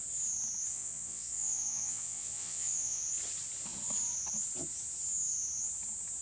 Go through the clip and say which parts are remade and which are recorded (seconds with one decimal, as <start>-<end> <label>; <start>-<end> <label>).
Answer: 0.0-0.7 recorded; 0.7-3.0 remade; 3.0-6.2 recorded